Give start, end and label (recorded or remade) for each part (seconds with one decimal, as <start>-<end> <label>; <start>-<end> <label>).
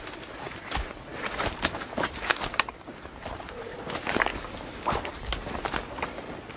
0.0-6.6 recorded